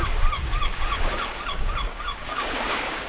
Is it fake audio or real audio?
fake